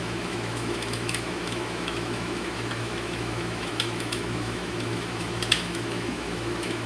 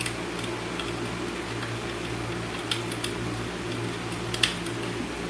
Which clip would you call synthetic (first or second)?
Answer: first